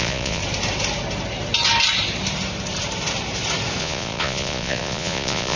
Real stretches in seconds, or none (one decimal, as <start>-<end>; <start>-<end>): 0.4-3.8